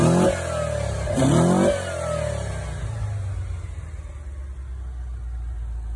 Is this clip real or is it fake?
real